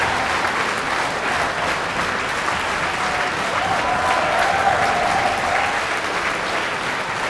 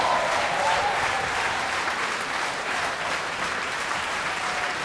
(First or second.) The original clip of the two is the first